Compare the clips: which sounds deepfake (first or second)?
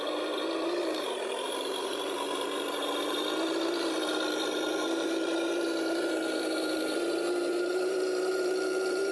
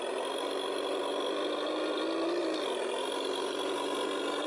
first